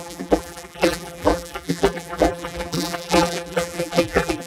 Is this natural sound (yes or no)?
no